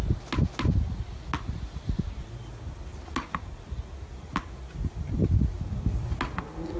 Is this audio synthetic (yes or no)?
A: no